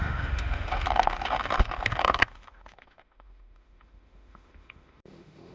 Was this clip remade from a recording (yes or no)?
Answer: yes